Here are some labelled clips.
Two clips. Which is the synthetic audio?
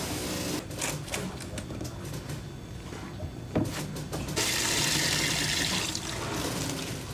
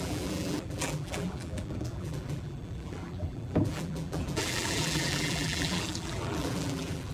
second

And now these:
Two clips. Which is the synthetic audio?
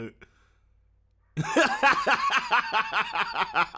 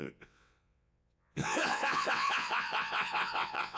second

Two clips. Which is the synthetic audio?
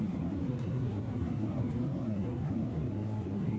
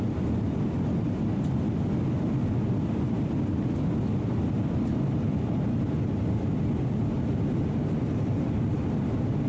first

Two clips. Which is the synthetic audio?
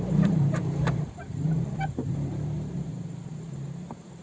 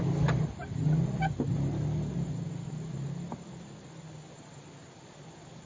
first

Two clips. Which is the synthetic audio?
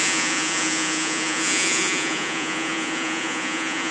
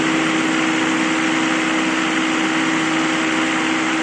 first